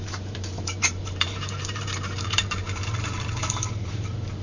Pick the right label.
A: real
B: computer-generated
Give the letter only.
B